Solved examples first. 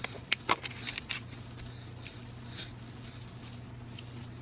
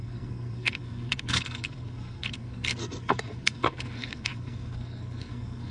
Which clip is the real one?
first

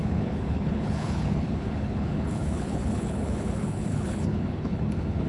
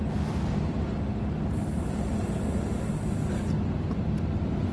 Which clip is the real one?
second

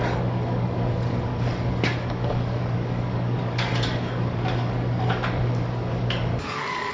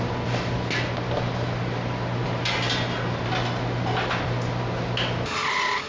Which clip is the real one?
second